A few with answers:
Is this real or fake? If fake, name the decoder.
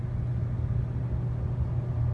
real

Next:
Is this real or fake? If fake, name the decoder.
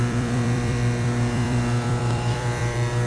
fake, vocoder, BigVGAN v2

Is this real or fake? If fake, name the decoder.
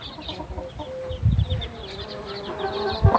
fake, vocoder, BigVGAN v2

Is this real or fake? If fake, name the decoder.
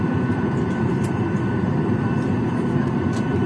fake, vocoder, BigVGAN v2